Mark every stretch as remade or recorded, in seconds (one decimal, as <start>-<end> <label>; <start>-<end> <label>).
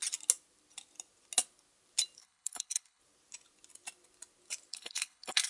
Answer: 0.0-2.2 recorded; 2.2-3.0 remade; 3.0-4.7 recorded; 4.7-5.5 remade